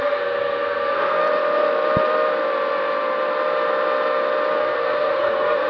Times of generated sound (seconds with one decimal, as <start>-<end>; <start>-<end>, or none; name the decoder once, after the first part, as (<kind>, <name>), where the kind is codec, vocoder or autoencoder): 0.0-1.2 (codec, SNAC); 4.6-5.7